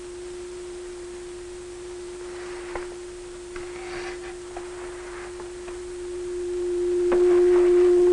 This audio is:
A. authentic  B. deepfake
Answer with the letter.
A